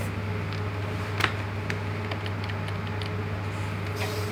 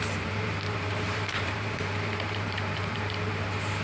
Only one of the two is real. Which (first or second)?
first